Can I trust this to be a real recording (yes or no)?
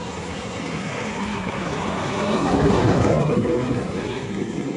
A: no